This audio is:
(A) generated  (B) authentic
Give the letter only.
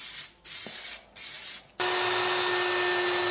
B